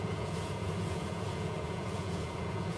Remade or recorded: remade